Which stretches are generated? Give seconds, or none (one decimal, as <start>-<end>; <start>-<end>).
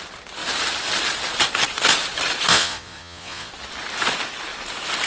2.5-3.5